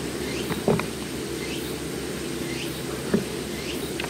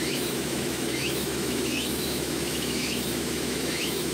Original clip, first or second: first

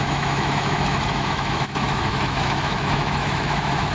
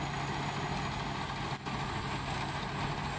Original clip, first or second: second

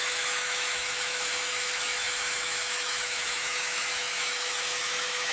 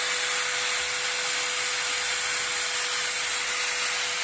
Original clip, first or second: second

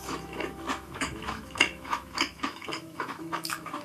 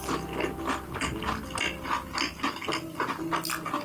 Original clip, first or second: second